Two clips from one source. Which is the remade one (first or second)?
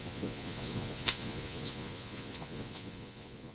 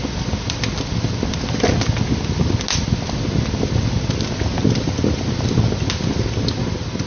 first